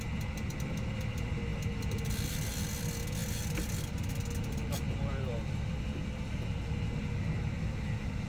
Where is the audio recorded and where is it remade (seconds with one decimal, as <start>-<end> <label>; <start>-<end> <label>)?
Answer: 0.0-3.2 recorded; 3.2-5.3 remade; 5.3-8.3 recorded

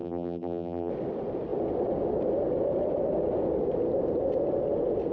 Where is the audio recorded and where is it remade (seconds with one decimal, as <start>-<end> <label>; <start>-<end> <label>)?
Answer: 0.0-0.9 remade; 0.9-5.1 recorded

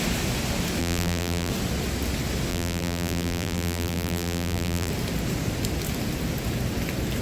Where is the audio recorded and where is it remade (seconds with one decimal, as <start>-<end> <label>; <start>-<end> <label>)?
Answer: 0.0-0.8 recorded; 0.8-1.5 remade; 1.5-2.5 recorded; 2.5-4.9 remade; 4.9-7.2 recorded

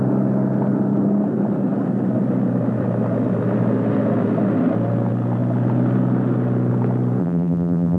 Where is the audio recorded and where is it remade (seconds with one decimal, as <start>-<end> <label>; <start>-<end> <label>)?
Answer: 0.0-7.2 recorded; 7.2-8.0 remade

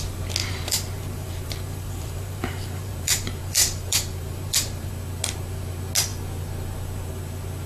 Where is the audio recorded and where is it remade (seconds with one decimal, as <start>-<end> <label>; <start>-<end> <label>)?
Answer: 0.0-0.4 recorded; 0.4-4.9 remade; 4.9-7.7 recorded

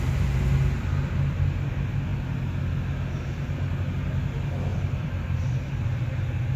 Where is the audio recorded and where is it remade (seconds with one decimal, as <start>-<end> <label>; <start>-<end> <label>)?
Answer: 0.0-4.7 recorded; 4.7-5.8 remade; 5.8-6.6 recorded

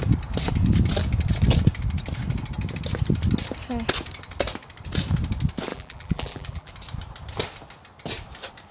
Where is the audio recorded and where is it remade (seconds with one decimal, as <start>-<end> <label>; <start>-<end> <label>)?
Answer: 0.0-5.7 recorded; 5.7-6.7 remade; 6.7-8.7 recorded

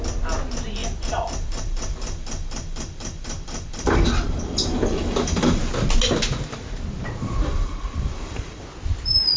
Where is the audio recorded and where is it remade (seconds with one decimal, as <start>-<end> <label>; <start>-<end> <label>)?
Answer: 0.0-0.8 recorded; 0.8-5.6 remade; 5.6-7.4 recorded; 7.4-8.6 remade; 8.6-9.4 recorded